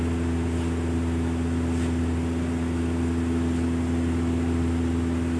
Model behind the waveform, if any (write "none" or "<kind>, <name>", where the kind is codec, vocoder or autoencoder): none